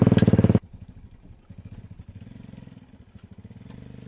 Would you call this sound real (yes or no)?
yes